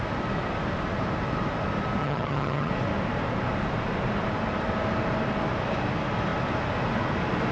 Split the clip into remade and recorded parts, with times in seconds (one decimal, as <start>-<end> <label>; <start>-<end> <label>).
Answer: 0.0-2.0 recorded; 2.0-2.7 remade; 2.7-7.5 recorded